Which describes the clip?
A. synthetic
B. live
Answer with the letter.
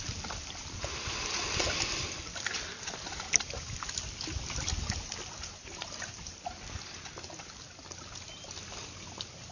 B